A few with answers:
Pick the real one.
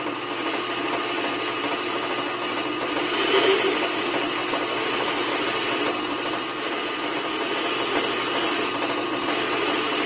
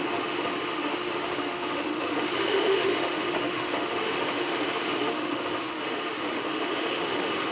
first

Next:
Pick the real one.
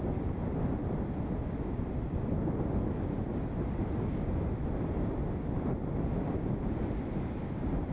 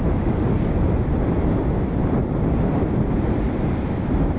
first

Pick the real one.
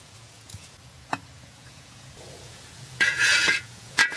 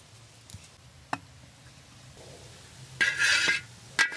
second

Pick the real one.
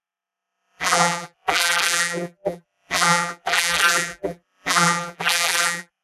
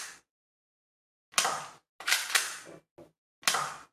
second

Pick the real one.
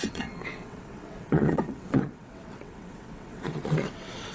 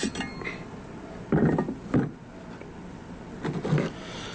second